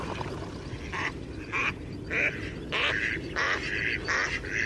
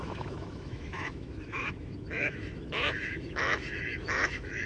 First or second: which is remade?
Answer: second